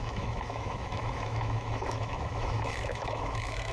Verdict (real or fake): fake